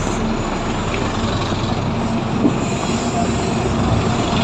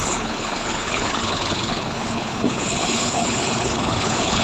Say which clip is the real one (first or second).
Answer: first